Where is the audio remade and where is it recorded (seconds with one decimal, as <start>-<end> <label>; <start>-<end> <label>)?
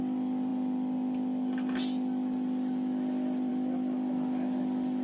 0.0-5.0 recorded